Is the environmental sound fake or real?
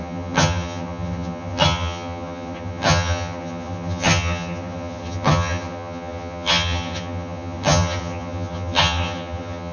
fake